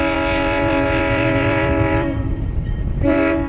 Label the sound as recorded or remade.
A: remade